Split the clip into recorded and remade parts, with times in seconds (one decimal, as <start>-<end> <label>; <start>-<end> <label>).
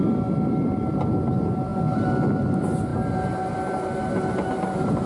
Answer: 0.0-5.1 recorded